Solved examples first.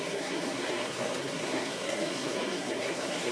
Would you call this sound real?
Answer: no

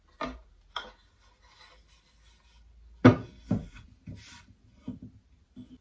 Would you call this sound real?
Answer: yes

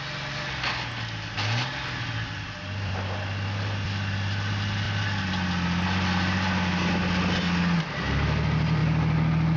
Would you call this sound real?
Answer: yes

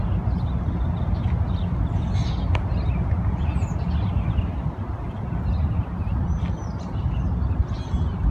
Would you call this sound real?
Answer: yes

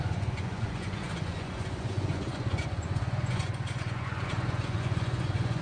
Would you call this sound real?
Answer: no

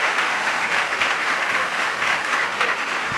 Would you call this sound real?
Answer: no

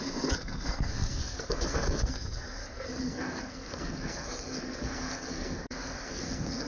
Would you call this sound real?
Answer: no